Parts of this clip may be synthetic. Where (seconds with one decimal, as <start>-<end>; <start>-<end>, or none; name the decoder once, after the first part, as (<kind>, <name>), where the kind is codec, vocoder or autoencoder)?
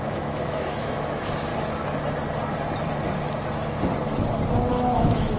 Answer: 0.0-1.5 (autoencoder, DAC-VAE); 4.7-5.4